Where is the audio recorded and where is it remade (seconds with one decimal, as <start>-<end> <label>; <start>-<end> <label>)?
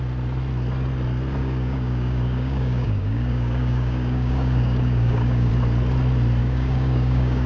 0.0-1.4 recorded; 1.4-5.5 remade; 5.5-6.4 recorded; 6.4-7.5 remade